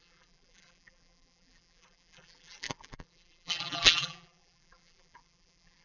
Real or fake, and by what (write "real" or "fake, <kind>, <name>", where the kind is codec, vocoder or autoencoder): fake, vocoder, BigVGAN v2